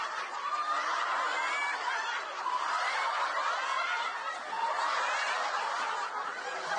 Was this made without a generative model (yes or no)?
no